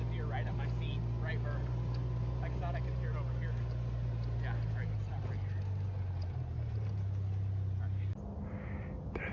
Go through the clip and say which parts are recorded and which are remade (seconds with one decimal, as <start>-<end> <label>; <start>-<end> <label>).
0.0-9.3 recorded